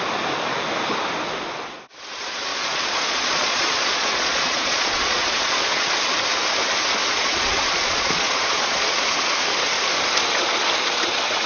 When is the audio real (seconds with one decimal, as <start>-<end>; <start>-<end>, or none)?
0.0-2.5; 5.9-7.1; 9.0-11.5